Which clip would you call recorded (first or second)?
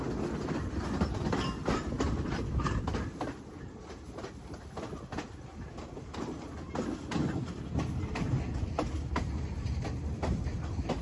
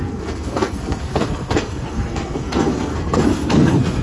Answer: first